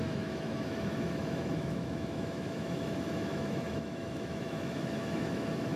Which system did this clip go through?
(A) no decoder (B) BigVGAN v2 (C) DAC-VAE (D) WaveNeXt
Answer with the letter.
C